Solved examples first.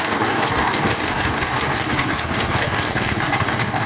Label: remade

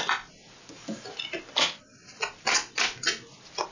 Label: recorded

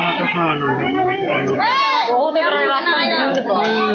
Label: remade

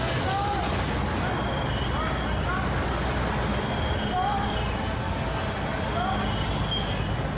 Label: recorded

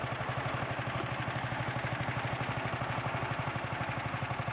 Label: recorded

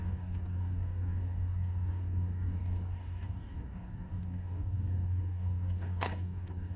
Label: remade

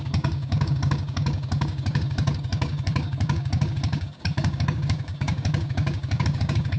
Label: remade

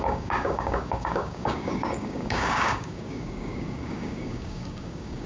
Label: remade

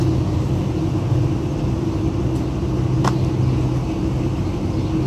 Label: recorded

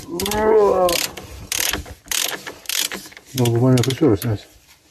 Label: recorded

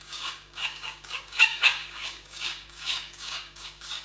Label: remade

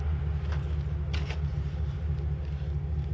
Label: recorded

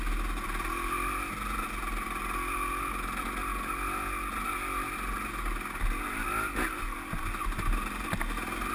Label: recorded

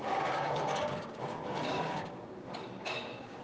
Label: remade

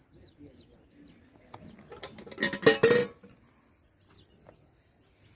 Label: recorded